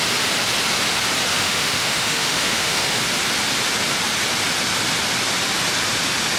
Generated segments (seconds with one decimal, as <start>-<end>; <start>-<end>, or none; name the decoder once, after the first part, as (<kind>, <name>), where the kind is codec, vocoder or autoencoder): 1.3-3.0 (autoencoder, DAC-VAE)